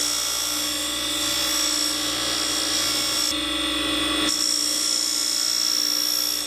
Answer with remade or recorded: recorded